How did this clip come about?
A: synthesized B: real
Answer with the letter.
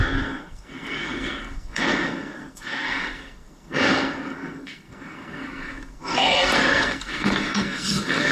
A